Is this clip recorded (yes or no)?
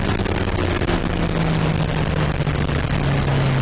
yes